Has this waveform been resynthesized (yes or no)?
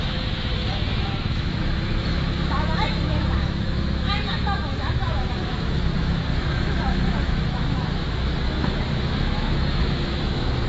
yes